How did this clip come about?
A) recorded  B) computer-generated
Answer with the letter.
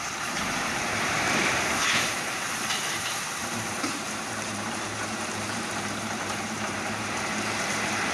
B